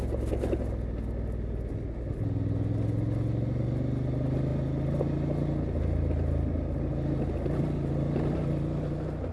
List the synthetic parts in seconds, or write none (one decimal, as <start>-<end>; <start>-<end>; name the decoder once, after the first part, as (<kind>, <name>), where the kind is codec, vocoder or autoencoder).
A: none